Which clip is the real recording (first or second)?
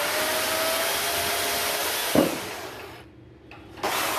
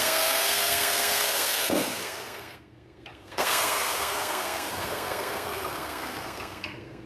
first